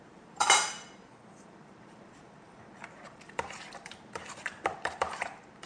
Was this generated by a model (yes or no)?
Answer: yes